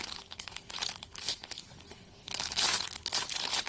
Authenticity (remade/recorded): remade